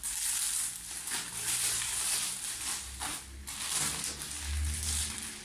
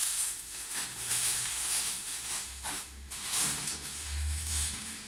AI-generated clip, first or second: second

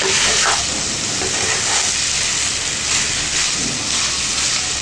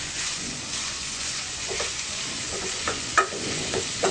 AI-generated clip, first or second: second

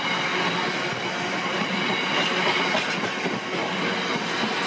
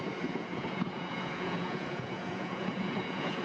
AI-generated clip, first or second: second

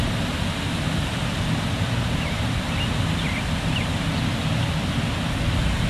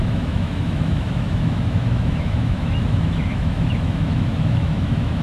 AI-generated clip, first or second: second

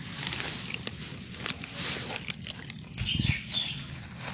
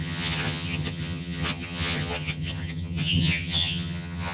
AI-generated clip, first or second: second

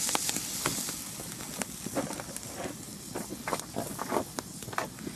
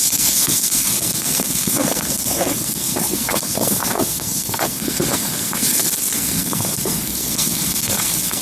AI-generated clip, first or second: second